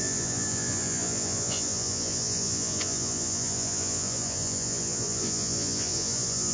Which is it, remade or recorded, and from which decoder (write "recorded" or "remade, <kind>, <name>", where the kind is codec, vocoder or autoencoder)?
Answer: remade, vocoder, Vocos